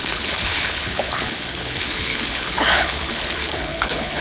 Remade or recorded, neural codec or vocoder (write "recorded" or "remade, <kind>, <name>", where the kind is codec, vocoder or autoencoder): remade, codec, HILCodec